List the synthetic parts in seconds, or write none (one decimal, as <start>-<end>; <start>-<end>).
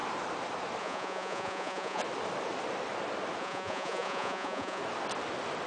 0.8-2.0; 3.4-4.8